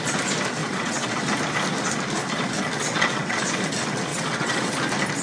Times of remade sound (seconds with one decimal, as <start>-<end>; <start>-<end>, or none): 0.6-1.2; 2.8-3.4; 4.1-4.7